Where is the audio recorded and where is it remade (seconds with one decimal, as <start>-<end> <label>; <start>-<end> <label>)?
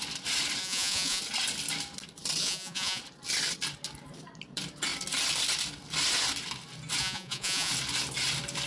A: 0.0-0.6 recorded; 0.6-1.2 remade; 1.2-2.4 recorded; 2.4-3.0 remade; 3.0-7.0 recorded; 7.0-7.7 remade; 7.7-8.7 recorded